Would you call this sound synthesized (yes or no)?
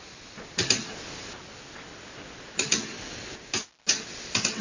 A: no